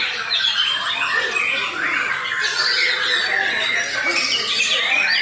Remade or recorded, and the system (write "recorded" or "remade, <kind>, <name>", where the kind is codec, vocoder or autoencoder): recorded